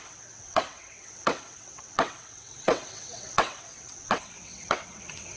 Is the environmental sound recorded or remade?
remade